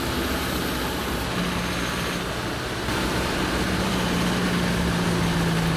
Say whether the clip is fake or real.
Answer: real